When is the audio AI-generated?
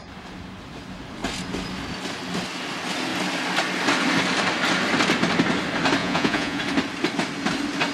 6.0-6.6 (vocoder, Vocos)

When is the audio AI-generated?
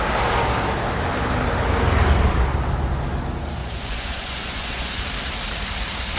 3.6-5.0 (vocoder, Vocos)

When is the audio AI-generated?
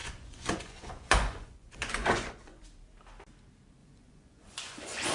0.0-2.6 (vocoder, Vocos); 3.8-5.1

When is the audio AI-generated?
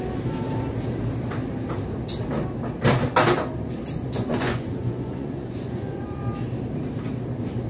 4.0-6.2 (vocoder, Vocos)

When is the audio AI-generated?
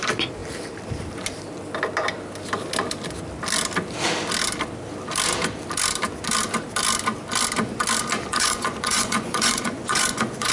8.3-10.5 (vocoder, Vocos)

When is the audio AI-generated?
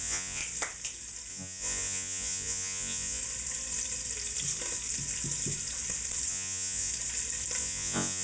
0.0-0.4 (vocoder, Vocos); 1.3-3.2; 6.3-6.9; 7.6-8.2